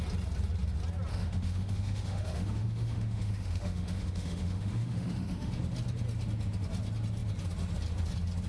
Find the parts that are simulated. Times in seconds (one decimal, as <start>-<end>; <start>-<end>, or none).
1.1-5.5